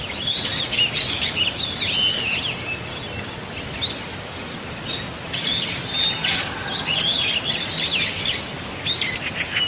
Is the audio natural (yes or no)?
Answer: yes